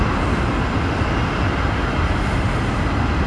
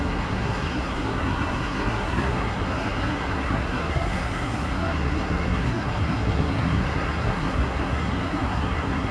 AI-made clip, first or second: second